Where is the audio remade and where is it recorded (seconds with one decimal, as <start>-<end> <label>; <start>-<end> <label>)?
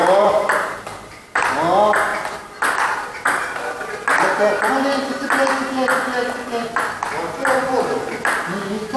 0.0-0.8 remade; 0.8-2.1 recorded; 2.1-4.7 remade; 4.7-9.0 recorded